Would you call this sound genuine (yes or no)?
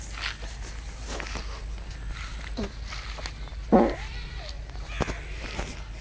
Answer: yes